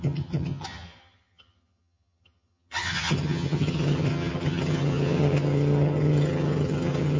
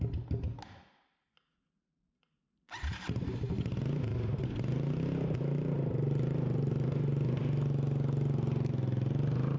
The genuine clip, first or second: second